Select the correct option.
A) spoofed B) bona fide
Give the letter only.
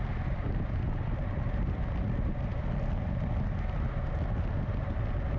B